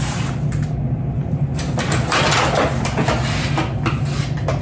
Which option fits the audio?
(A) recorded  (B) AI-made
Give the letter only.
A